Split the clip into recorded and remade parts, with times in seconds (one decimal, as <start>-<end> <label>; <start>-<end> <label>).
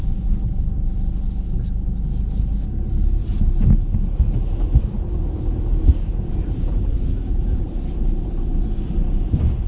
0.0-6.1 recorded; 6.1-7.7 remade; 7.7-9.7 recorded